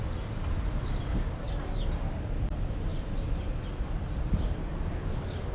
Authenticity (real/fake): real